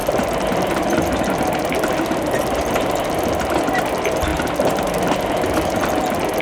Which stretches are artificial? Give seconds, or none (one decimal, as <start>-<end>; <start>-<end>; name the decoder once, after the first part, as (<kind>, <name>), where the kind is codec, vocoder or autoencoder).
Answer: none